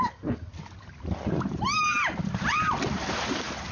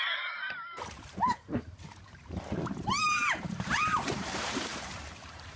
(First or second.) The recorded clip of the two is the first